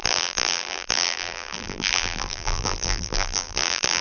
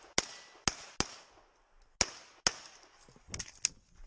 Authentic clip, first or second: second